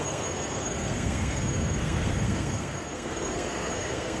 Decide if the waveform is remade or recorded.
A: remade